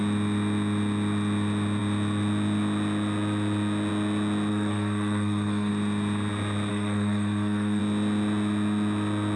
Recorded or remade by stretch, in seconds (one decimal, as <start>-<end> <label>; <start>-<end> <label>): 0.0-4.5 recorded; 4.5-5.7 remade; 5.7-6.7 recorded; 6.7-7.8 remade; 7.8-9.4 recorded